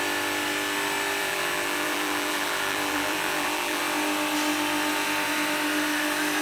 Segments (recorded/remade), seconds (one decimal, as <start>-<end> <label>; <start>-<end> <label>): 0.0-1.2 recorded; 1.2-3.8 remade; 3.8-6.4 recorded